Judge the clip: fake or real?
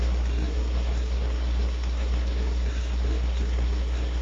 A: fake